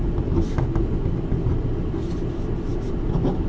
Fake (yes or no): no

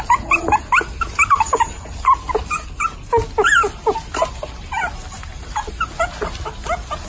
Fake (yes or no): no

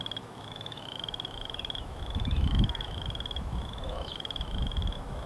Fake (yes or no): yes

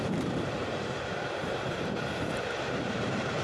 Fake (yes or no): yes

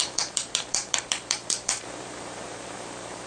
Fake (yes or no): yes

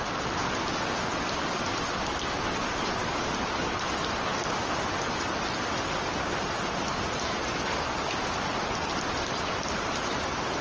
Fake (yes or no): no